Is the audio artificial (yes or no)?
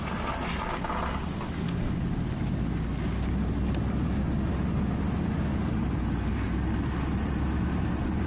no